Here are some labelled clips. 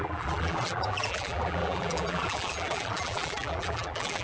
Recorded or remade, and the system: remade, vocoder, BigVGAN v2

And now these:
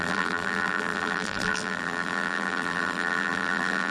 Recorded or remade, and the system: remade, vocoder, BigVGAN v2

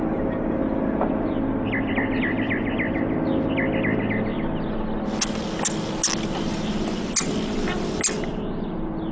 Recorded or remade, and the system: recorded